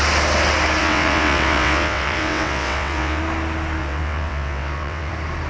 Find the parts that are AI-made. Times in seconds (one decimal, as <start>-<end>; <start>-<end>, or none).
0.8-3.2; 3.8-5.1